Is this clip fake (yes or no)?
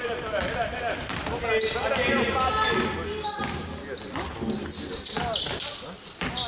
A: no